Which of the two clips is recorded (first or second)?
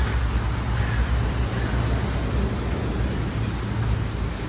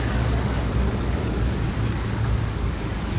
first